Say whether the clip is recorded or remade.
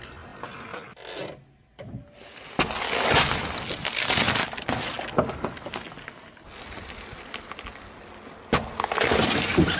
recorded